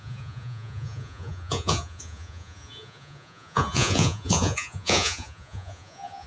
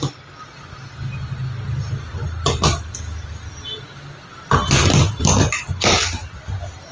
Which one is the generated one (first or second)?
first